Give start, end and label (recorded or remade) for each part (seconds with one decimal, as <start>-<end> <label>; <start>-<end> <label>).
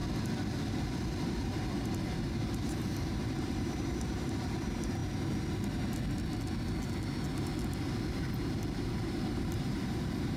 0.0-1.2 recorded; 1.2-5.0 remade; 5.0-8.1 recorded; 8.1-10.4 remade